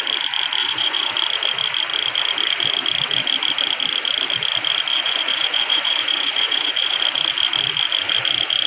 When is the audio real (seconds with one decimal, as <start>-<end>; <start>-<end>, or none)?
0.0-0.6; 1.1-4.9; 7.0-8.7